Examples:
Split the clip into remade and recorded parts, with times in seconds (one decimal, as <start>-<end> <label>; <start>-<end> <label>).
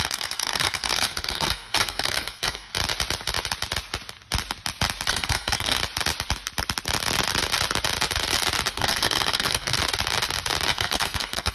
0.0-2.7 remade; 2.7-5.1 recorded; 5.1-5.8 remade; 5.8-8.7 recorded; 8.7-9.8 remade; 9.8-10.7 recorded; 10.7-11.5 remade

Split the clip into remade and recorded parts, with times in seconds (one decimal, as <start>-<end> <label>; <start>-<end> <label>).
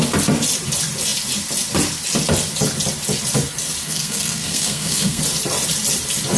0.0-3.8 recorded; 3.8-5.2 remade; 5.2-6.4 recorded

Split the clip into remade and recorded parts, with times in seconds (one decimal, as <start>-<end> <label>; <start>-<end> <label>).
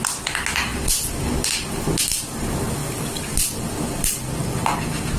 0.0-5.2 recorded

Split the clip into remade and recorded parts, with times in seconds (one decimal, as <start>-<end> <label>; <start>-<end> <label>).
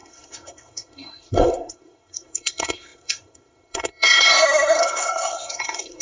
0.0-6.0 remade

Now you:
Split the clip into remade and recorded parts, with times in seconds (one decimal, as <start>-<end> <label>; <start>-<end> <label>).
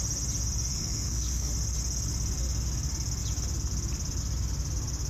0.0-0.7 recorded; 0.7-1.5 remade; 1.5-5.1 recorded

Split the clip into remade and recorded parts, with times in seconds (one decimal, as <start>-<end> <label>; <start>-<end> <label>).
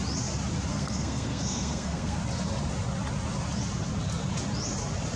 0.0-0.7 recorded; 0.7-2.2 remade; 2.2-5.2 recorded